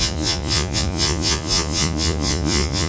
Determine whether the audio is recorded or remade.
remade